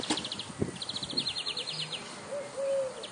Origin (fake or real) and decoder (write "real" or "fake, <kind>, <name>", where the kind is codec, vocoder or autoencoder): real